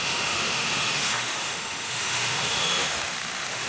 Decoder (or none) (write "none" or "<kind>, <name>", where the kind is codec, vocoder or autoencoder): autoencoder, DAC-VAE